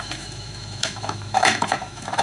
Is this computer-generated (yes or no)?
yes